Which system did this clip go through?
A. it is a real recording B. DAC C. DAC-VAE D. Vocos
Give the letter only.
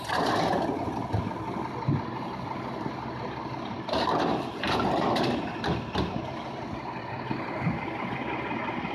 A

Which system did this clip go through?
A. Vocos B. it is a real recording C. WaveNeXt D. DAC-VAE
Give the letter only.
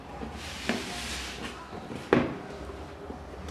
B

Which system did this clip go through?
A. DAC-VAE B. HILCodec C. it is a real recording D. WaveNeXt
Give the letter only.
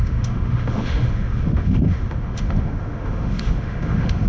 A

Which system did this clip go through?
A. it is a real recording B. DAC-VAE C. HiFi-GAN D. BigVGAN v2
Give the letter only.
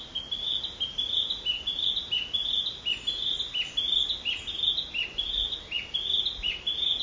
A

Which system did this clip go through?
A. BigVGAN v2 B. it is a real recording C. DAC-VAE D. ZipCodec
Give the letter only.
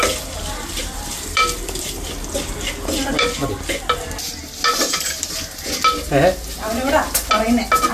B